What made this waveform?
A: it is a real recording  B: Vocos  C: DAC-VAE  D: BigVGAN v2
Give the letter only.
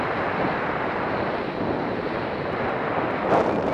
A